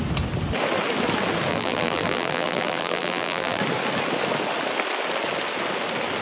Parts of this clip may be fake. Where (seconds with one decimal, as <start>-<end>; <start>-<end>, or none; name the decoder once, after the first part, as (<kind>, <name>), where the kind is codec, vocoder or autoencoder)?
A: 1.5-3.6 (vocoder, BigVGAN v2)